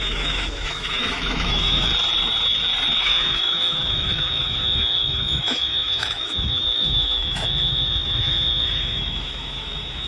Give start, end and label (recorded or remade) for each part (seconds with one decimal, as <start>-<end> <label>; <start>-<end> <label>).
0.0-1.9 remade; 1.9-3.0 recorded; 3.0-10.1 remade